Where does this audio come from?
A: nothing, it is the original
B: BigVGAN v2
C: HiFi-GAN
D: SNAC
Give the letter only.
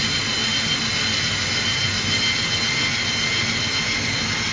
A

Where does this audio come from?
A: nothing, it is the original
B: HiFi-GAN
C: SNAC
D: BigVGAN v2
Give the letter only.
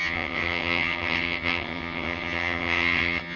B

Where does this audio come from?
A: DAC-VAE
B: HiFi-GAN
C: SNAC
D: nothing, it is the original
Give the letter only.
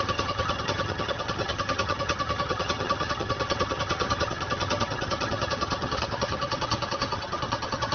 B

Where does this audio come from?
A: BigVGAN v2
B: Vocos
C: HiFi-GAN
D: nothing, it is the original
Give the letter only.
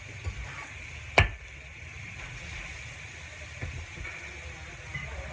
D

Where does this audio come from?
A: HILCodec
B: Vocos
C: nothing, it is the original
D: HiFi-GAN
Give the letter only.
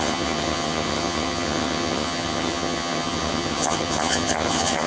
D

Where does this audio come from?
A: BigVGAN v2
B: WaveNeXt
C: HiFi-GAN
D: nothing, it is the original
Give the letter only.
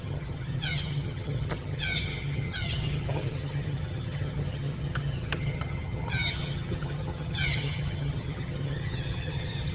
C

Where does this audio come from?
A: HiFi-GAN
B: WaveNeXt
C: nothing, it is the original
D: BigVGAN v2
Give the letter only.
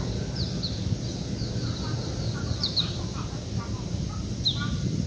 C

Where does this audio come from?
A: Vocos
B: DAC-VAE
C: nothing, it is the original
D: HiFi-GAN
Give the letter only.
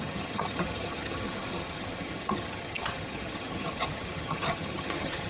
D